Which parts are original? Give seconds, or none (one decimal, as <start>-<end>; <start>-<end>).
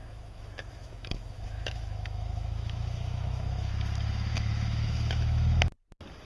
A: 3.7-4.3; 5.6-6.2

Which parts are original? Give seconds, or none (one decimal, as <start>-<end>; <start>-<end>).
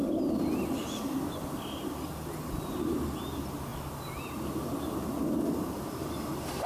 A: 0.0-6.7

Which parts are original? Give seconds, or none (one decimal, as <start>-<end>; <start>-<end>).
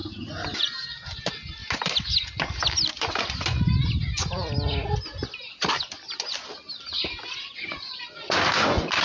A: 0.0-9.0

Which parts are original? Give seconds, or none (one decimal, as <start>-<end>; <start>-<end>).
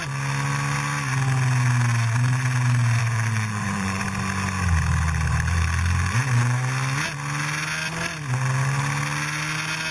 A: 0.0-3.0; 4.0-9.9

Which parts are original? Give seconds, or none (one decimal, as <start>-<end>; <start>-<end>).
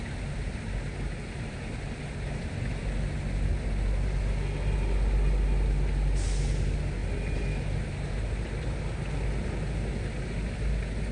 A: 0.0-11.1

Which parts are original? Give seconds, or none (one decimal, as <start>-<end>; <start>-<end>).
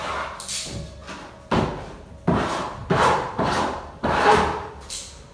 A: 0.0-2.8; 4.7-5.3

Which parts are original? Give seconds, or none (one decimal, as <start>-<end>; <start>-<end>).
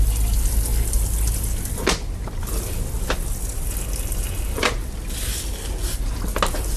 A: 0.0-6.8